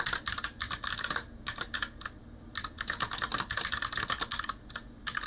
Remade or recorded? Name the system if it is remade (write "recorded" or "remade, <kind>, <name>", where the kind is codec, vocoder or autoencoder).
recorded